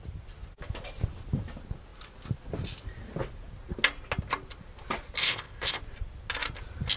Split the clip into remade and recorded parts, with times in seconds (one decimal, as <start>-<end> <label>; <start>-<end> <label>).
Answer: 0.0-5.2 recorded; 5.2-5.8 remade; 5.8-7.0 recorded